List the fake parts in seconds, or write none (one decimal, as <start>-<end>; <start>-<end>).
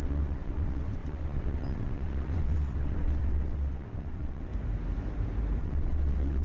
0.0-4.5; 5.6-6.4